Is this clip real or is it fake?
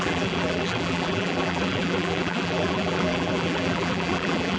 fake